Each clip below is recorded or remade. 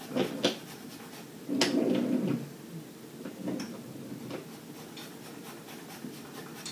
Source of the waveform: recorded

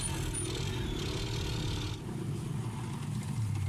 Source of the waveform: recorded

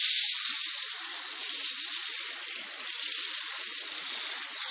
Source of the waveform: recorded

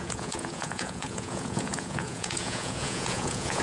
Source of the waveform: remade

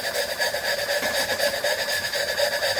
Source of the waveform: remade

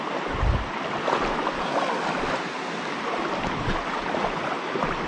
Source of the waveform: recorded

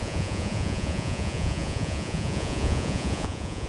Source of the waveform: remade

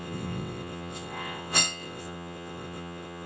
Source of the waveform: remade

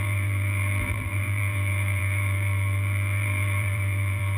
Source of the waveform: remade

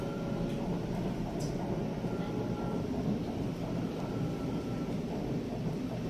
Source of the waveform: recorded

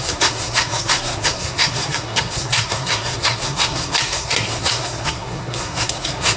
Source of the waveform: remade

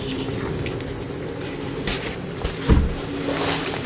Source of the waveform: recorded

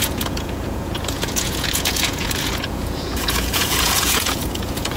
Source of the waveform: remade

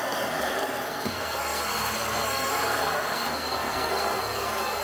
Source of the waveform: remade